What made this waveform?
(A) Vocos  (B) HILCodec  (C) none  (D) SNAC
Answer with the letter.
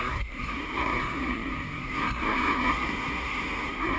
D